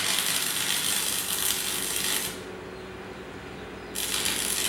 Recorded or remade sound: recorded